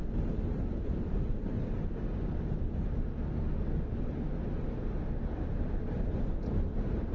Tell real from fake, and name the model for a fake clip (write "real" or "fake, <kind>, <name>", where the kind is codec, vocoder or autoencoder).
real